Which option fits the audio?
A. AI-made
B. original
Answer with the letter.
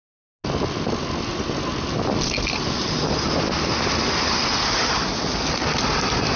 B